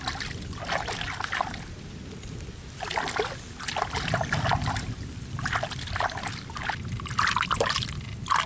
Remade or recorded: recorded